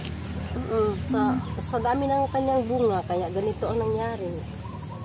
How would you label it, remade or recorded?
recorded